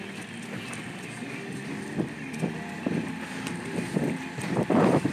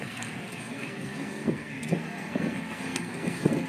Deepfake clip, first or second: second